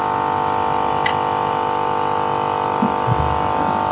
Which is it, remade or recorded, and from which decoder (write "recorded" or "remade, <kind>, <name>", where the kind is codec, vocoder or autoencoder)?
recorded